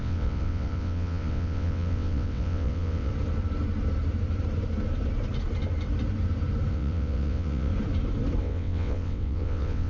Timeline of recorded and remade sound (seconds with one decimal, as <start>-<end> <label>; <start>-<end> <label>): 0.0-3.1 remade; 3.1-6.7 recorded; 6.7-7.7 remade; 7.7-8.4 recorded; 8.4-9.9 remade